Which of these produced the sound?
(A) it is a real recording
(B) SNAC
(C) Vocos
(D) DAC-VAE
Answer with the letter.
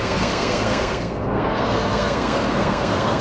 B